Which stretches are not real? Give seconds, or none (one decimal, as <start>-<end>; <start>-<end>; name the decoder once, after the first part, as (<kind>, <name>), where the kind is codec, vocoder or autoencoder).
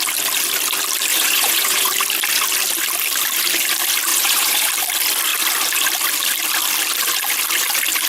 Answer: 1.1-1.9 (vocoder, Vocos); 4.1-4.7